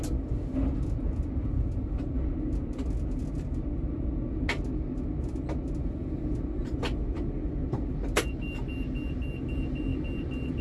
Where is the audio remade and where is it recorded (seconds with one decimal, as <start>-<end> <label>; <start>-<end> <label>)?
0.0-10.6 recorded